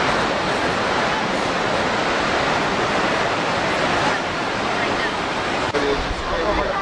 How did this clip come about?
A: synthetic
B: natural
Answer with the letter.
A